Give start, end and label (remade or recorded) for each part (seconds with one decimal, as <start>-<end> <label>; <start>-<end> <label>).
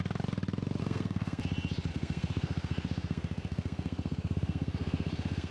0.0-0.8 recorded; 0.8-1.4 remade; 1.4-1.9 recorded; 1.9-5.5 remade